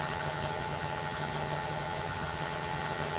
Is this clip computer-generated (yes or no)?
yes